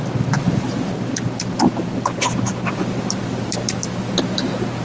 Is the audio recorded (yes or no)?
yes